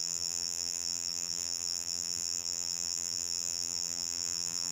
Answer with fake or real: fake